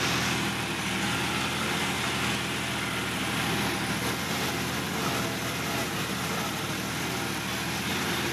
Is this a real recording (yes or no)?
yes